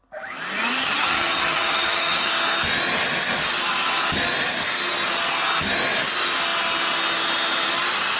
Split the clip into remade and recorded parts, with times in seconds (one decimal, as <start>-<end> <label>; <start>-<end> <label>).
0.0-0.8 recorded; 0.8-2.3 remade; 2.3-8.2 recorded